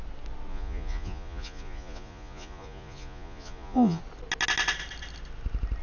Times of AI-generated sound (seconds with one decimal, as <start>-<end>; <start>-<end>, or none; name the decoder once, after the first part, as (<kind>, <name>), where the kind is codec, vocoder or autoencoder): 0.5-4.0 (vocoder, Vocos)